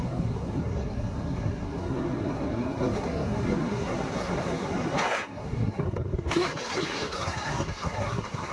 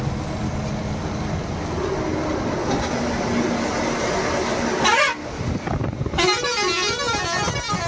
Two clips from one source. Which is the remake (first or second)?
first